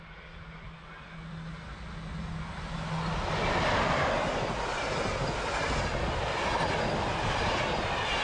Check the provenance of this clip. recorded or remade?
recorded